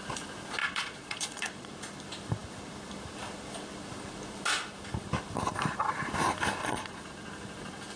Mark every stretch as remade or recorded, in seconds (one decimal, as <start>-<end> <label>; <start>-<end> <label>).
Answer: 0.0-0.6 recorded; 0.6-1.7 remade; 1.7-6.6 recorded; 6.6-7.1 remade; 7.1-8.0 recorded